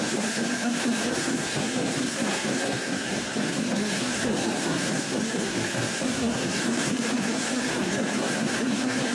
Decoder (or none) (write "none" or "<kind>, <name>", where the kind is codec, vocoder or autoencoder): codec, SNAC